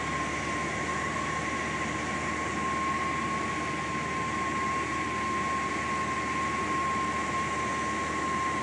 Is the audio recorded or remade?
recorded